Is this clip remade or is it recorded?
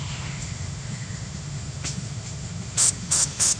remade